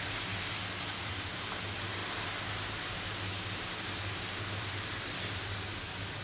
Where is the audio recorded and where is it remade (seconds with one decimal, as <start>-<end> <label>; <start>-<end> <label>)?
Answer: 0.0-6.2 recorded